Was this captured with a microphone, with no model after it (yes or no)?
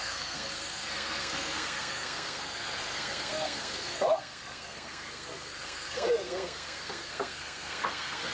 no